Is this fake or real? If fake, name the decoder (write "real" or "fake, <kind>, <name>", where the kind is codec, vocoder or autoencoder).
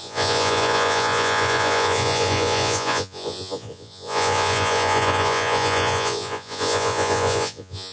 fake, vocoder, Vocos